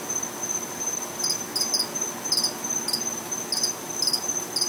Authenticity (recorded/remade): recorded